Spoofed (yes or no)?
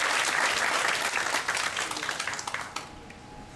no